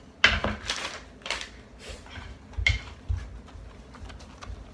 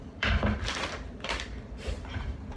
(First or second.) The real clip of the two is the first